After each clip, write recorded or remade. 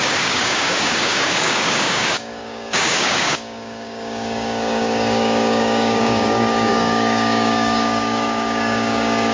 remade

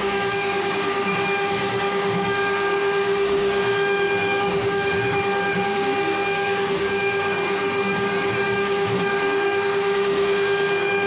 remade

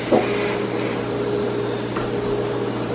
recorded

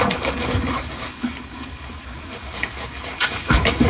remade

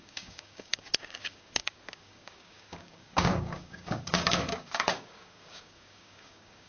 remade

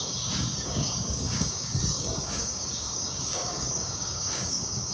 remade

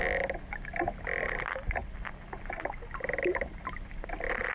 recorded